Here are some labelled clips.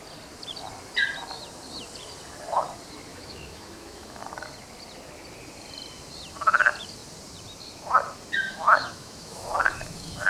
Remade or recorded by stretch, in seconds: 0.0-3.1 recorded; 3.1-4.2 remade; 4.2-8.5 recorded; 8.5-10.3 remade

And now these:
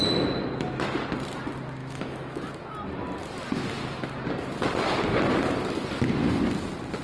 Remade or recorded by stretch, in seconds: 0.0-1.8 recorded; 1.8-2.5 remade; 2.5-7.0 recorded